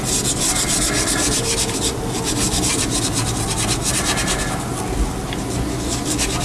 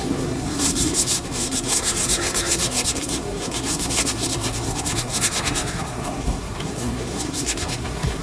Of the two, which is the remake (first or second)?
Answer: second